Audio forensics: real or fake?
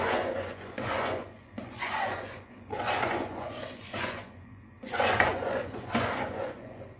fake